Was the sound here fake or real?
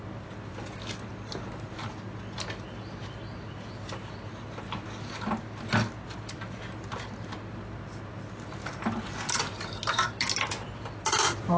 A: real